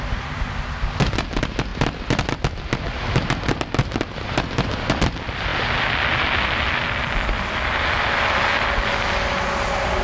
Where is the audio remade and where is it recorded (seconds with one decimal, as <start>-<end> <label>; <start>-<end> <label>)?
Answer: 0.0-10.0 recorded